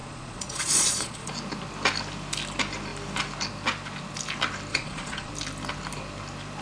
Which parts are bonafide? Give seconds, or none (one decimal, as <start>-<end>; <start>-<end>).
1.3-4.7; 5.3-6.6